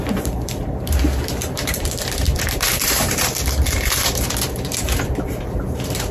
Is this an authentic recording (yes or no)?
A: no